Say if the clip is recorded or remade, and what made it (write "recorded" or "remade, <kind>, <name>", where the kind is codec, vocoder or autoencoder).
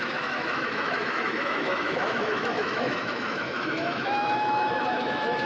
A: remade, autoencoder, DAC-VAE